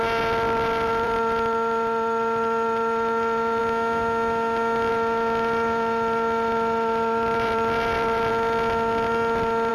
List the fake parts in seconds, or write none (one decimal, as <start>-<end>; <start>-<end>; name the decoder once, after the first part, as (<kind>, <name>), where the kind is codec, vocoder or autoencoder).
0.0-3.6 (vocoder, BigVGAN v2); 4.9-8.3